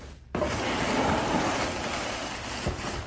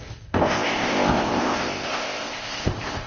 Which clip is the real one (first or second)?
first